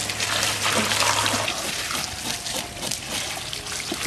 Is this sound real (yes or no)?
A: yes